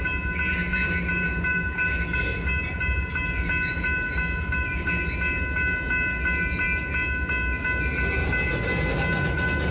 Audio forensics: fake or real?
real